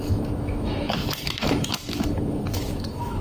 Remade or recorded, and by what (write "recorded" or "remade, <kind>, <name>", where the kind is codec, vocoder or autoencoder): remade, autoencoder, DAC-VAE